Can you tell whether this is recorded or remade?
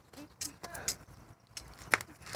recorded